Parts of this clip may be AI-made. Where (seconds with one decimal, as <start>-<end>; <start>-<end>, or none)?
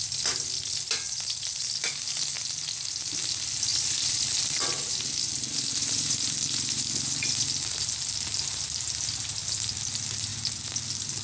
3.7-7.7